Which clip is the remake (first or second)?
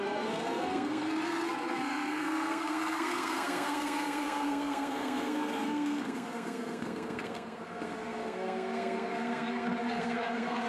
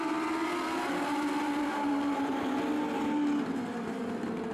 first